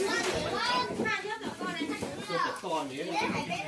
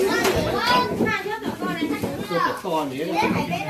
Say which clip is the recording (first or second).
second